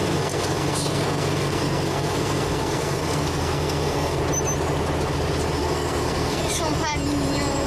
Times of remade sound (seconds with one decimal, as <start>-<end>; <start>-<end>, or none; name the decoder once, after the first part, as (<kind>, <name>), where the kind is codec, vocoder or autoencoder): 0.0-4.2 (codec, SNAC); 5.6-6.4